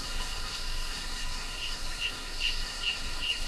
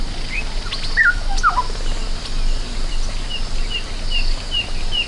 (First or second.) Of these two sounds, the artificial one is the first